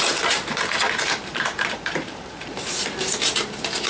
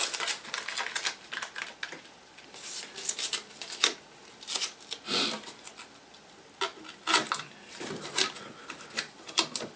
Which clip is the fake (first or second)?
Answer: first